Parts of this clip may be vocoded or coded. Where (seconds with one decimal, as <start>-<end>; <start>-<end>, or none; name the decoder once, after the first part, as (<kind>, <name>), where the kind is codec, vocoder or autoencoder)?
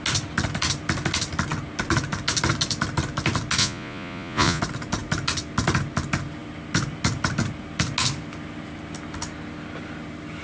3.6-4.6 (vocoder, Vocos)